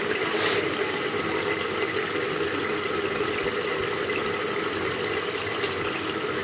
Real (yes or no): yes